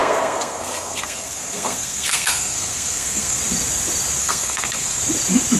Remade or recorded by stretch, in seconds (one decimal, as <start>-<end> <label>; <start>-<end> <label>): 0.0-3.4 remade; 3.4-4.2 recorded; 4.2-5.0 remade; 5.0-5.6 recorded